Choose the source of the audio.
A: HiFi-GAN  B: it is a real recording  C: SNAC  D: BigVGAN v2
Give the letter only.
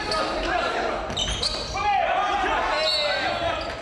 B